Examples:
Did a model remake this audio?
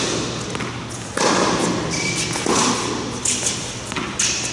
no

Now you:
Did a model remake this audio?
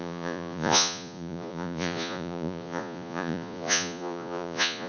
yes